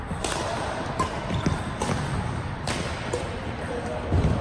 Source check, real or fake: real